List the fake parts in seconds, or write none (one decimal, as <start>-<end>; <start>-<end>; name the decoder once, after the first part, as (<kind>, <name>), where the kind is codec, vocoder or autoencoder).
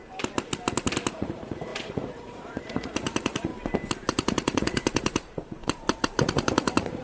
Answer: 1.1-3.5 (vocoder, Vocos); 4.0-7.0